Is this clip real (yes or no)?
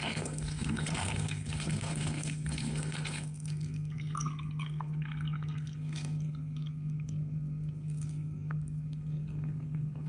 no